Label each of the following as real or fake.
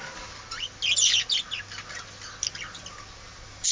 real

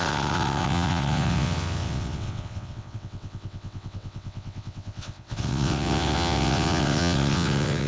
fake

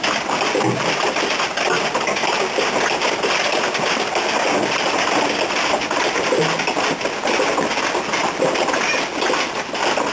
real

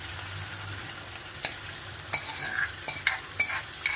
real